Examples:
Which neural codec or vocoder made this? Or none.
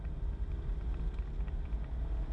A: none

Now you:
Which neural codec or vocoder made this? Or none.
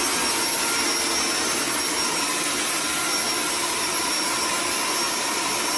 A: none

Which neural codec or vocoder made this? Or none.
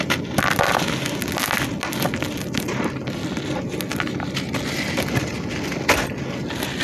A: none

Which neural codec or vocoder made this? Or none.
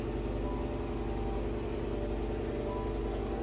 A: none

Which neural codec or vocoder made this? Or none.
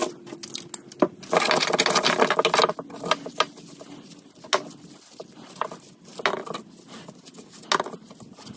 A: none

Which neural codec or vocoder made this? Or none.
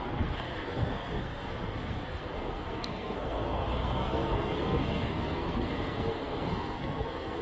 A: codec, SNAC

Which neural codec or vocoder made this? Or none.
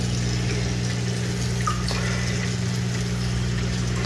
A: none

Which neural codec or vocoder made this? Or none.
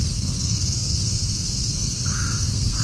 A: codec, SNAC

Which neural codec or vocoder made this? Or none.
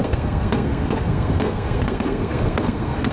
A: codec, SNAC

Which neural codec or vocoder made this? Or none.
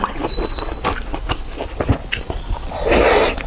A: none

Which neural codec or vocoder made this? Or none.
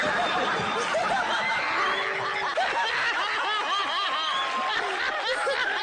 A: none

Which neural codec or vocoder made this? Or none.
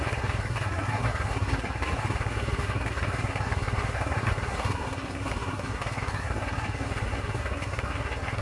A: codec, SNAC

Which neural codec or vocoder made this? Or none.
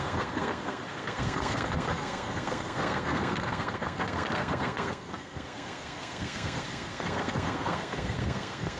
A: codec, SNAC